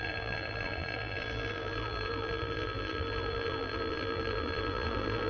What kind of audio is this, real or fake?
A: fake